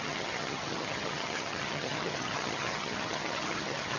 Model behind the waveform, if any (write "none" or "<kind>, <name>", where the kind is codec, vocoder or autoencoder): vocoder, HiFi-GAN